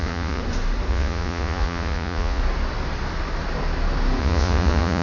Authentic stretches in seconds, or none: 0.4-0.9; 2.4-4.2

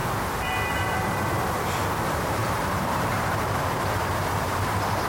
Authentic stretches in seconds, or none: 0.0-2.0

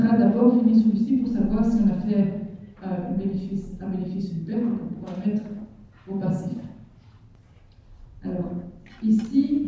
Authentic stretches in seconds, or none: 0.0-4.9; 5.6-9.7

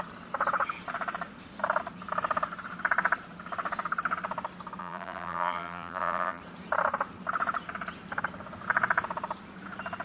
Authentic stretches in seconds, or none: 0.0-4.8; 6.4-10.0

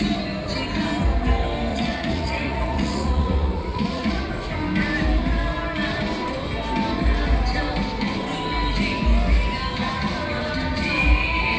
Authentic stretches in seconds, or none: 0.0-1.7; 4.3-11.6

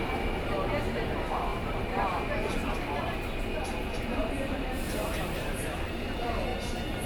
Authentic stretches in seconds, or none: 0.0-1.5; 2.5-4.2; 5.8-7.1